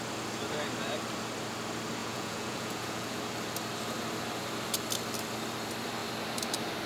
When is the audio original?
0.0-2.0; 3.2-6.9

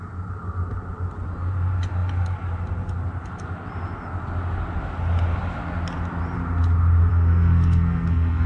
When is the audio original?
0.0-7.1

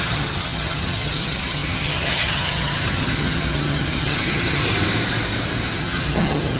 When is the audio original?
4.6-5.8

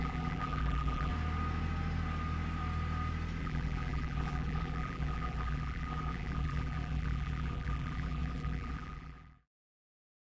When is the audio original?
1.1-3.4

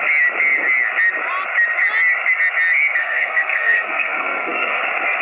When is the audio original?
0.0-3.0; 4.8-5.2

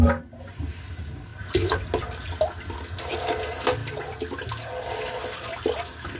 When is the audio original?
0.0-6.2